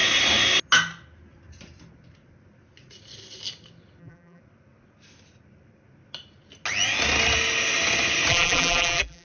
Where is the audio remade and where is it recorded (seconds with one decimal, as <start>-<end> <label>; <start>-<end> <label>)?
0.0-4.0 recorded; 4.0-4.4 remade; 4.4-8.3 recorded; 8.3-9.2 remade